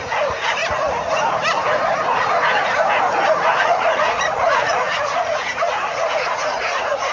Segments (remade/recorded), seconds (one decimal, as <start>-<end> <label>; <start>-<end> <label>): 0.0-0.6 remade; 0.6-3.6 recorded; 3.6-7.1 remade